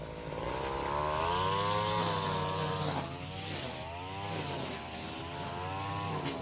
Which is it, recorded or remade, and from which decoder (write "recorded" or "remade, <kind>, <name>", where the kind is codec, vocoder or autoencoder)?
recorded